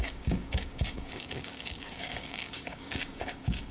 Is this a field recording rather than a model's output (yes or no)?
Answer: no